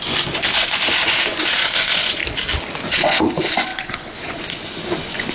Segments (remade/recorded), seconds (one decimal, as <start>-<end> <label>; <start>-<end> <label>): 0.0-2.2 remade; 2.2-2.8 recorded; 2.8-5.3 remade